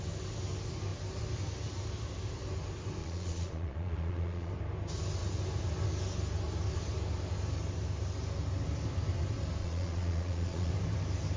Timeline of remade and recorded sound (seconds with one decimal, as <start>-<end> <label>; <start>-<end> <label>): 0.0-3.0 recorded; 3.0-4.5 remade; 4.5-9.6 recorded; 9.6-10.7 remade; 10.7-11.4 recorded